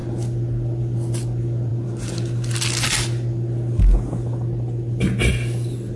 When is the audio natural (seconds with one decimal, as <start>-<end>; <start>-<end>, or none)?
0.0-6.0